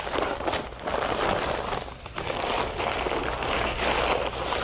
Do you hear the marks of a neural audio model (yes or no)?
no